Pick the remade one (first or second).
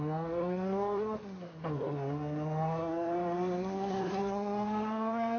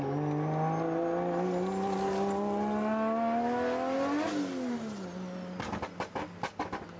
first